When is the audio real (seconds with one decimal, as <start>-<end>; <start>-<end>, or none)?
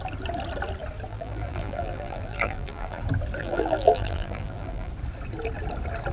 0.0-1.1; 3.0-3.4; 4.9-6.1